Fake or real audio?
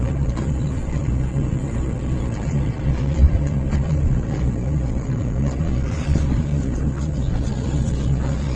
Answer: fake